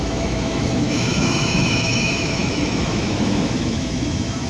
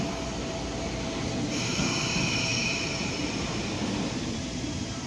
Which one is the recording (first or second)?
second